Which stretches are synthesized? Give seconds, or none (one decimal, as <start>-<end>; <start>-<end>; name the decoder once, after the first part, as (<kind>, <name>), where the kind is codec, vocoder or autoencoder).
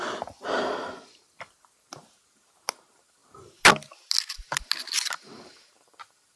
none